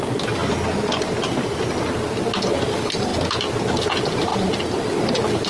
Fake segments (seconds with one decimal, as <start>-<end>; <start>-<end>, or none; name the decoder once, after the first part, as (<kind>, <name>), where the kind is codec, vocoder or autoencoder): none